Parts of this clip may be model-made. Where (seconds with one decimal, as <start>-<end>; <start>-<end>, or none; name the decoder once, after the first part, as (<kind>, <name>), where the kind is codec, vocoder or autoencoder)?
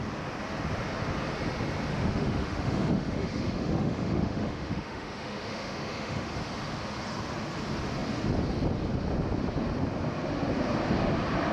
1.9-6.3 (autoencoder, DAC-VAE)